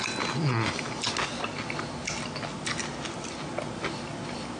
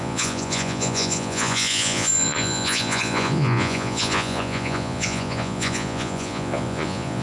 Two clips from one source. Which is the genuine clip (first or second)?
first